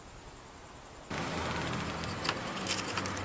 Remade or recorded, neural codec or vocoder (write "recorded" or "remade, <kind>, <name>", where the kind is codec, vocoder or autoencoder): recorded